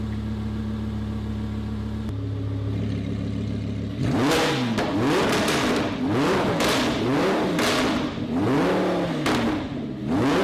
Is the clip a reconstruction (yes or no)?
no